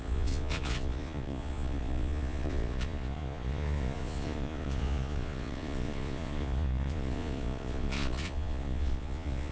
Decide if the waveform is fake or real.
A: fake